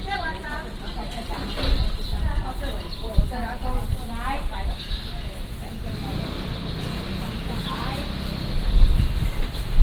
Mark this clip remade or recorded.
recorded